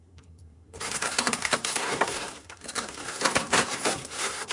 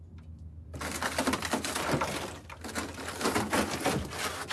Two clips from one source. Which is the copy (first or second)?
first